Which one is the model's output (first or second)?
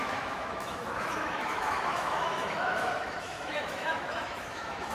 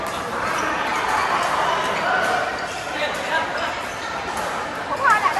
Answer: first